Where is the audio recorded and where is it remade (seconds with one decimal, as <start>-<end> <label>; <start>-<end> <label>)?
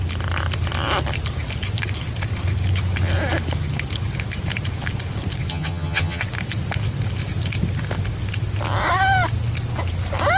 0.0-5.5 recorded; 5.5-6.2 remade; 6.2-10.4 recorded